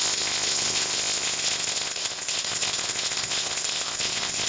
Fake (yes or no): yes